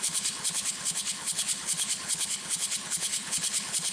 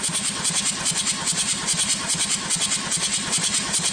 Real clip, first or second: second